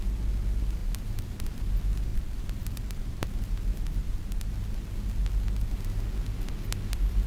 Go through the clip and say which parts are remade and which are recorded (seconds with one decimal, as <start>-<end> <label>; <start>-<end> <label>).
0.0-0.8 recorded; 0.8-1.7 remade; 1.7-2.1 recorded; 2.1-3.3 remade; 3.3-4.0 recorded; 4.0-4.5 remade; 4.5-7.3 recorded